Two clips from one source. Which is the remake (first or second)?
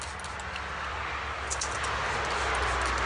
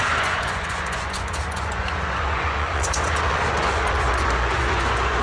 second